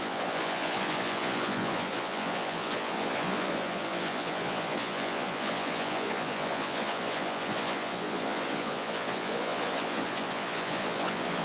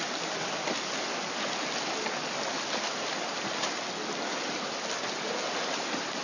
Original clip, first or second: second